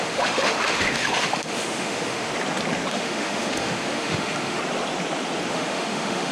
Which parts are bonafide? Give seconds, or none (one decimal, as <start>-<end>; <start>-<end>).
2.3-2.9; 4.6-5.5